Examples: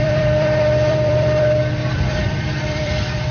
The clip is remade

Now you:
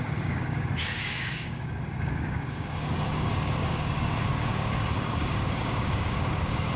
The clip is remade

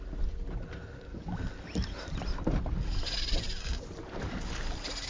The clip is recorded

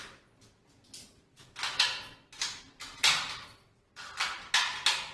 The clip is recorded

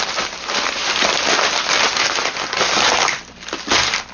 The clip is recorded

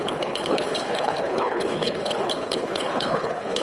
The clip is remade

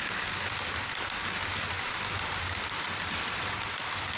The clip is recorded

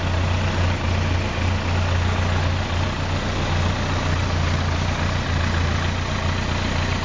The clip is recorded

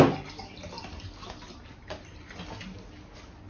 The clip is recorded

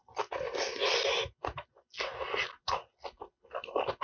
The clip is recorded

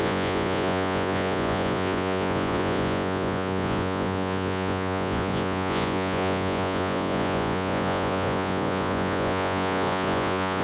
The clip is remade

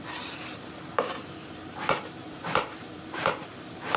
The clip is remade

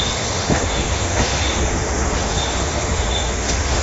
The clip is remade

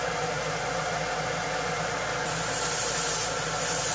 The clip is recorded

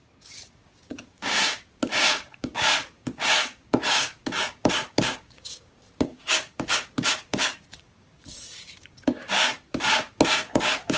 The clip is remade